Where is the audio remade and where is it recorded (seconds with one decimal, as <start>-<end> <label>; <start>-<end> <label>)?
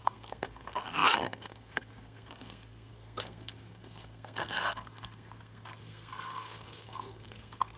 0.0-7.8 remade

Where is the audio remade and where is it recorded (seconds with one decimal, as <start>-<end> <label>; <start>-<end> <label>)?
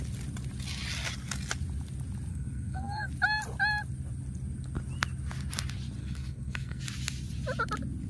0.0-2.3 recorded; 2.3-3.1 remade; 3.1-6.0 recorded; 6.0-6.8 remade; 6.8-8.1 recorded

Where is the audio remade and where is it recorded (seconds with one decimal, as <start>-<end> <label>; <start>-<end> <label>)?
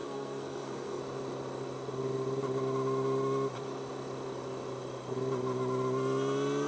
0.0-1.0 remade; 1.0-6.7 recorded